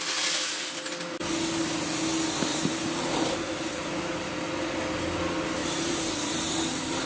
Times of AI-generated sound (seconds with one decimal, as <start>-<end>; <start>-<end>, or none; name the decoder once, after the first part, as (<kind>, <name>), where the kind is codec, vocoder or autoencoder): 2.5-4.3 (vocoder, BigVGAN v2); 5.6-6.4